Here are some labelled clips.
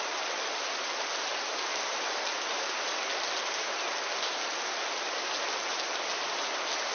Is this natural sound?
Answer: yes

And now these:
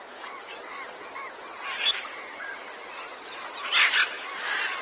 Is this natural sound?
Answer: yes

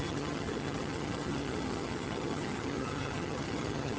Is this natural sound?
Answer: no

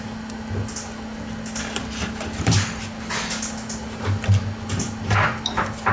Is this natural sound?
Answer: yes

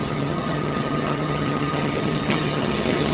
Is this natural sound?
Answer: no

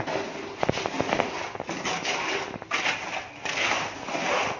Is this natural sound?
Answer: yes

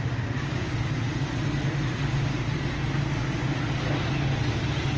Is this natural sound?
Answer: yes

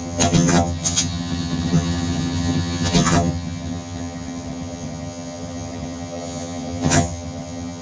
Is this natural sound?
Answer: no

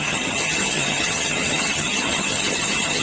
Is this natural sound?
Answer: no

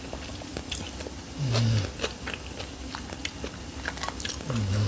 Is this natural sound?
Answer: yes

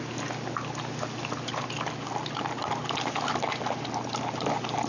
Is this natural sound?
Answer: yes